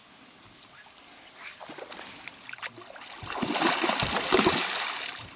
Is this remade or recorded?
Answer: recorded